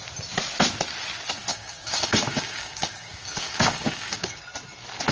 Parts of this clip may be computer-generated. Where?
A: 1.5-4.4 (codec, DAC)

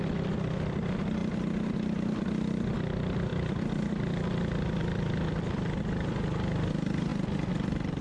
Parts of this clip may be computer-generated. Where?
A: none

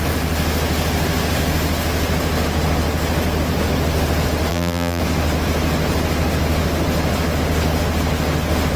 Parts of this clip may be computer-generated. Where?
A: 4.5-5.0 (vocoder, BigVGAN v2)

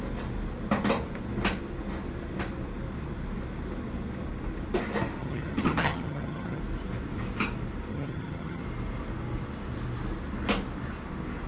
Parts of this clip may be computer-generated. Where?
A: 5.2-6.6 (vocoder, HiFi-GAN); 7.9-8.6